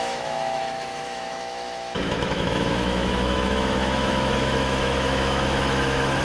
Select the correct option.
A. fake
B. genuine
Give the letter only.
A